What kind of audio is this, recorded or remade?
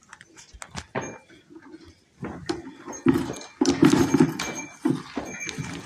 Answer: recorded